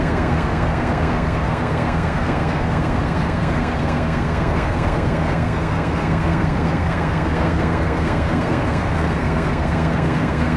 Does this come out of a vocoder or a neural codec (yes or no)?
yes